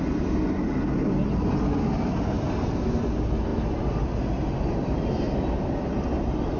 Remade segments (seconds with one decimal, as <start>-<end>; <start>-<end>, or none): none